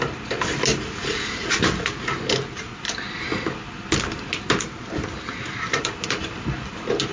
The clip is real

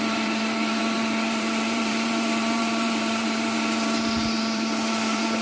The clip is fake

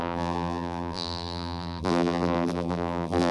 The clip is fake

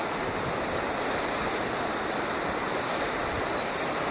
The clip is real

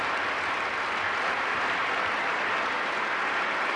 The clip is fake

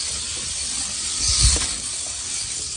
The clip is real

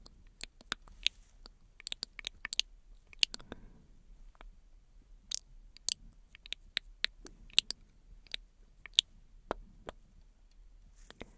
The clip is real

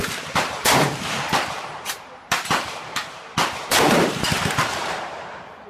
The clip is fake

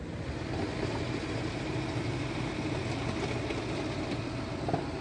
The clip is real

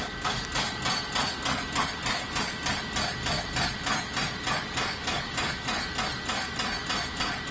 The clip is real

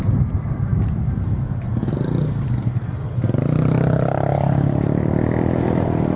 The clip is fake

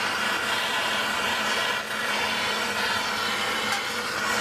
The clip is real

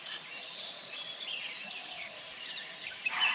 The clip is fake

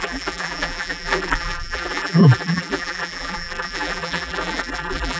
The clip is fake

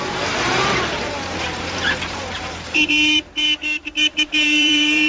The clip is fake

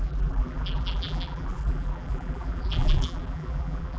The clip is fake